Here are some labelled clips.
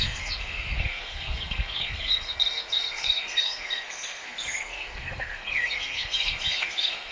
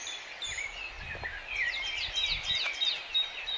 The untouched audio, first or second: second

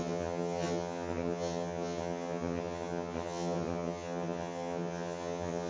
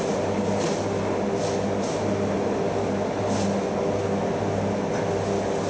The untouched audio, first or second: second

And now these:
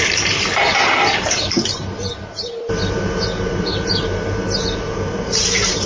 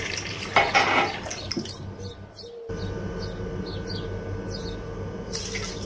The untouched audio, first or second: second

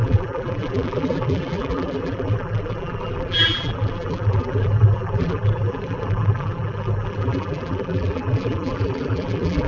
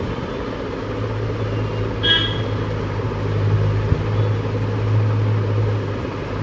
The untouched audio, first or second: second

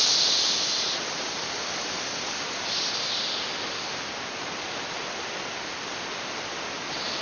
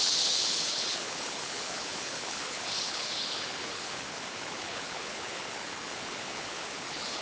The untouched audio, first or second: first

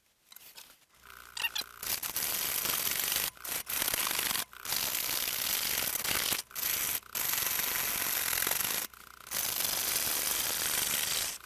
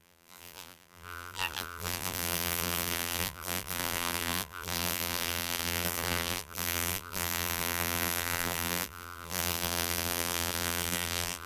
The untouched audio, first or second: first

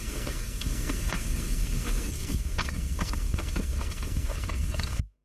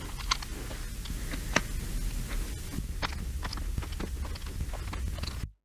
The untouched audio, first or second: second